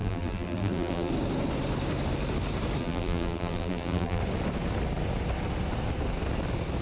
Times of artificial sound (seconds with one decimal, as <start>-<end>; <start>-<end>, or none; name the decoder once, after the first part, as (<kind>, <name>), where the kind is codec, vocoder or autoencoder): 0.0-1.1 (vocoder, BigVGAN v2); 2.8-4.2